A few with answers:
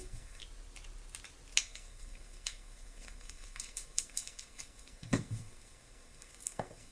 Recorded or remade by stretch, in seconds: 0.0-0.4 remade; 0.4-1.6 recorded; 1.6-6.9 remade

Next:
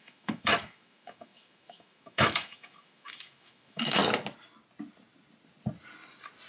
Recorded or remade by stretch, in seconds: 0.0-4.0 remade; 4.0-6.5 recorded

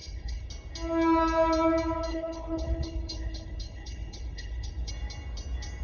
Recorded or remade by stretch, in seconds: 0.0-0.5 remade; 0.5-2.1 recorded; 2.1-4.9 remade; 4.9-5.8 recorded

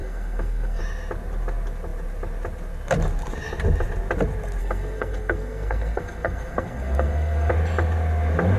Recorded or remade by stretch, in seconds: 0.0-0.8 remade; 0.8-4.6 recorded; 4.6-7.5 remade; 7.5-8.6 recorded

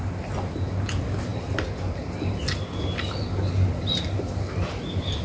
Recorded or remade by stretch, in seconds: 0.0-5.2 recorded

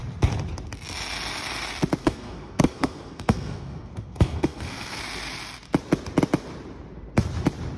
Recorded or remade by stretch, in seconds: 0.0-2.0 recorded; 2.0-5.0 remade; 5.0-7.8 recorded

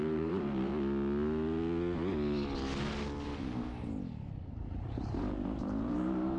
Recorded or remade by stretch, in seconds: 0.0-0.7 remade; 0.7-4.5 recorded; 4.5-6.4 remade